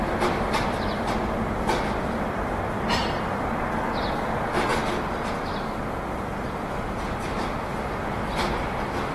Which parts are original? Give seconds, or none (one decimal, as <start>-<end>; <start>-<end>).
0.0-9.1